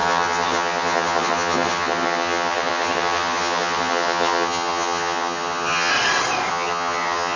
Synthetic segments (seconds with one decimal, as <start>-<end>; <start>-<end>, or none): 0.0-5.9; 6.5-7.4